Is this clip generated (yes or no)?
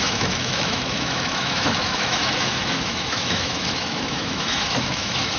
yes